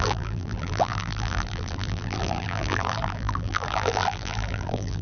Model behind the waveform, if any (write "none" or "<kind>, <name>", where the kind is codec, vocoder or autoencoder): vocoder, BigVGAN v2